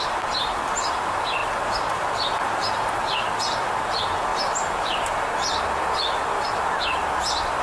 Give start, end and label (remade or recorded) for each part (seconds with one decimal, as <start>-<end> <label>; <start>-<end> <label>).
0.0-7.6 recorded